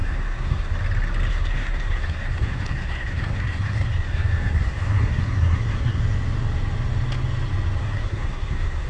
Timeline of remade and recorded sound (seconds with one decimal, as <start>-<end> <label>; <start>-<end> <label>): 0.0-0.7 remade; 0.7-1.3 recorded; 1.3-6.0 remade; 6.0-7.8 recorded; 7.8-8.9 remade